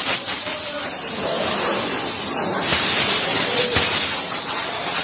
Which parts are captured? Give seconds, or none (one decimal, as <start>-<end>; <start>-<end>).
0.5-3.2; 3.7-4.4